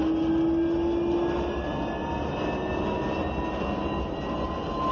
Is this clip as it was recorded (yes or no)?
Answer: yes